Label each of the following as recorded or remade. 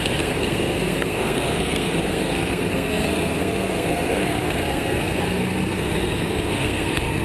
remade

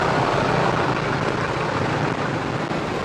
recorded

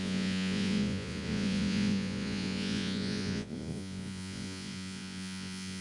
remade